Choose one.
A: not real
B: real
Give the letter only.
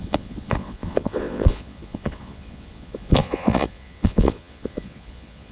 A